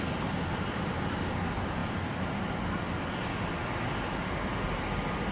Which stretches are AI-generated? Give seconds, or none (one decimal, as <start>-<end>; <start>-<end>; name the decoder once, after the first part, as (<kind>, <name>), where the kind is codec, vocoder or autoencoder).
none